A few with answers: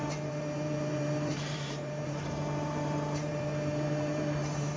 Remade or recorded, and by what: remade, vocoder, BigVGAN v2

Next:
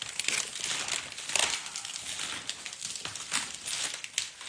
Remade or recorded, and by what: recorded